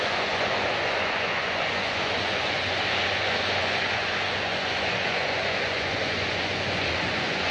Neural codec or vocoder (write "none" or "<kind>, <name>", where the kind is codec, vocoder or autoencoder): vocoder, Vocos